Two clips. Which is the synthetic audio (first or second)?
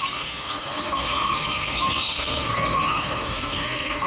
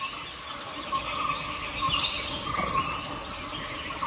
first